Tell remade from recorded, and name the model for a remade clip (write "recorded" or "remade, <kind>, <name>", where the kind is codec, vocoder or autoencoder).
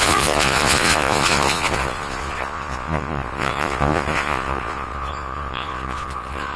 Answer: remade, vocoder, Vocos